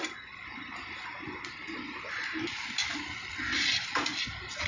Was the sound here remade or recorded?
recorded